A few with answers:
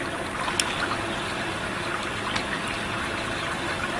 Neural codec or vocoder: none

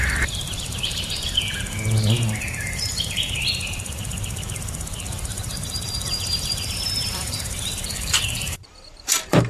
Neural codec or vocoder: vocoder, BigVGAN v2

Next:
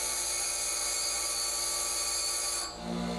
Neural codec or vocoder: none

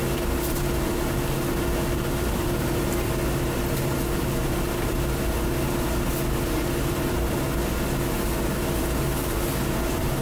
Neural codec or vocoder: none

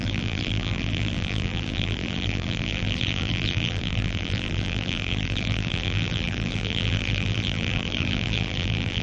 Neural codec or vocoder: vocoder, BigVGAN v2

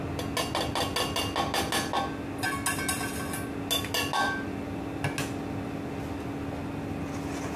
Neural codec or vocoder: none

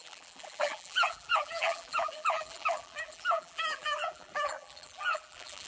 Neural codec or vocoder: vocoder, BigVGAN v2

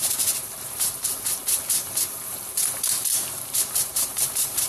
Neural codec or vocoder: vocoder, BigVGAN v2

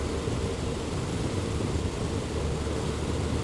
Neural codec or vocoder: none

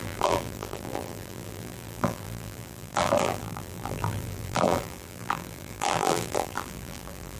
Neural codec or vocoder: vocoder, BigVGAN v2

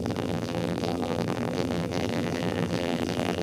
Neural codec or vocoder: vocoder, BigVGAN v2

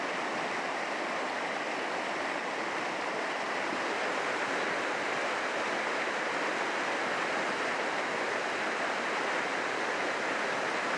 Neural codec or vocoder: none